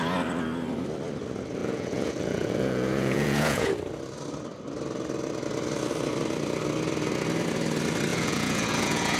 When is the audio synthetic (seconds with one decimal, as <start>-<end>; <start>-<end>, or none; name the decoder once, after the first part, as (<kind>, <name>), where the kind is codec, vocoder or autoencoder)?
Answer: 1.6-3.7 (vocoder, Vocos); 8.1-9.2